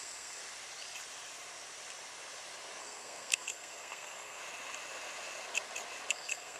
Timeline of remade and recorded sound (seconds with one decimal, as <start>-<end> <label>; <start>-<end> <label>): 0.0-0.4 remade; 0.4-2.8 recorded; 2.8-4.4 remade; 4.4-6.1 recorded; 6.1-6.6 remade